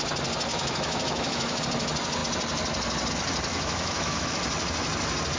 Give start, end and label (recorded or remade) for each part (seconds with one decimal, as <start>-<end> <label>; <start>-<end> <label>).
0.0-0.5 recorded; 0.5-1.6 remade; 1.6-3.5 recorded; 3.5-4.3 remade; 4.3-5.4 recorded